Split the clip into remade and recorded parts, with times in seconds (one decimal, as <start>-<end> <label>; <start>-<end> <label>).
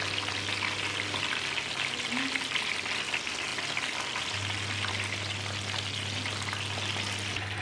0.0-7.6 recorded